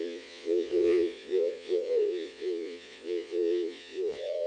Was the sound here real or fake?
fake